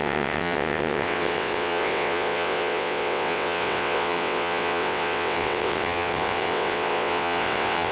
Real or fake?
fake